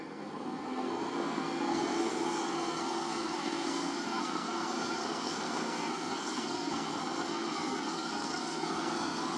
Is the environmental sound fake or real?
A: fake